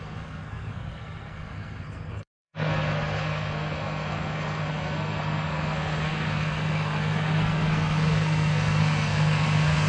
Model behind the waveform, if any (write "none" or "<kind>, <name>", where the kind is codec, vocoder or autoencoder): codec, SNAC